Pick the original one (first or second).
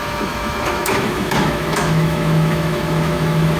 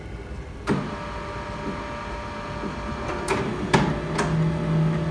second